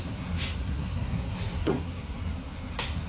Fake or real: fake